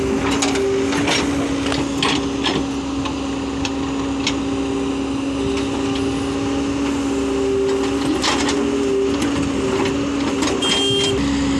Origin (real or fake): real